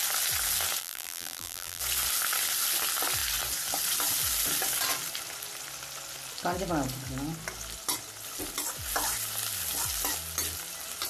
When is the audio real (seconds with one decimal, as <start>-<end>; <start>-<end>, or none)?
0.0-0.8; 1.8-11.1